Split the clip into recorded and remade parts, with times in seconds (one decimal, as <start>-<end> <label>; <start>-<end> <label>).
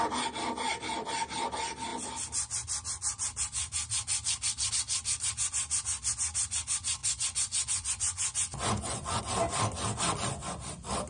0.0-7.0 recorded; 7.0-9.2 remade; 9.2-11.1 recorded